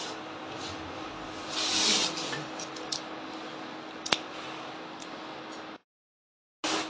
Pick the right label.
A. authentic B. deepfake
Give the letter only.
A